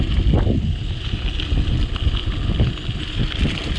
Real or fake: real